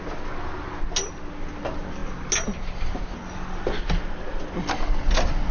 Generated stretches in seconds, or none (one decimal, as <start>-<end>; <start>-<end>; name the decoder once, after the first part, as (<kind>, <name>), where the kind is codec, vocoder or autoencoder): none